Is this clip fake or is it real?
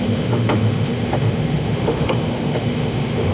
fake